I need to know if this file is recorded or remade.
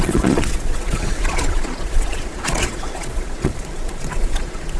remade